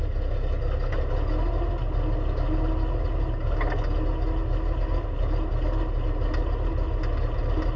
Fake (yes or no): no